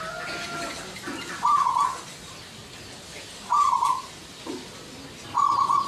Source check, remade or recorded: recorded